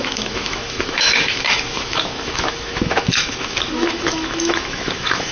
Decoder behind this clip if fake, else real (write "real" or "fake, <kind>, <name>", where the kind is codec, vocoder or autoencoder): fake, autoencoder, DAC-VAE